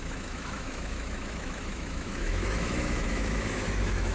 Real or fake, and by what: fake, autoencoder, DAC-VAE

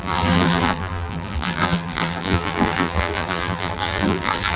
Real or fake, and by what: fake, vocoder, BigVGAN v2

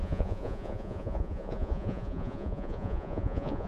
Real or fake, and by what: fake, vocoder, Vocos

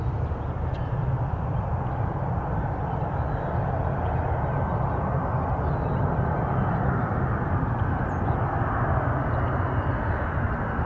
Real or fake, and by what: real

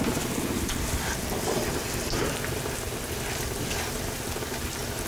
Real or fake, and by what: real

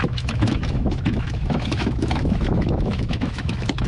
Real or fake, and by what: fake, autoencoder, DAC-VAE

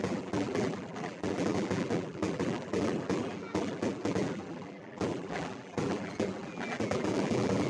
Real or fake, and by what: fake, vocoder, BigVGAN v2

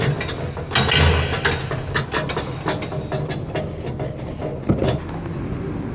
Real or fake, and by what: real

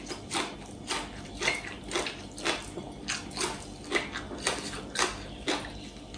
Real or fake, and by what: real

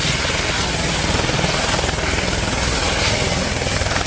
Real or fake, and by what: real